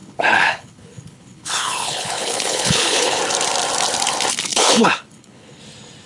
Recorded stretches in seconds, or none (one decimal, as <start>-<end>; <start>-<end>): 3.2-4.5; 5.6-6.1